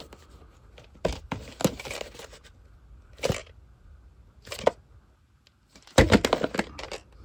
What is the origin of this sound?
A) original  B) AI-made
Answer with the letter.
A